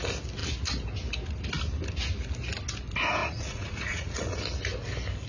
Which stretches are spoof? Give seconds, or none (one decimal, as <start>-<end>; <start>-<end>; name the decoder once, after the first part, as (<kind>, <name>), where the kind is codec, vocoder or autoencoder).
3.2-4.4 (vocoder, Vocos)